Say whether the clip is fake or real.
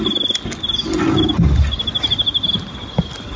real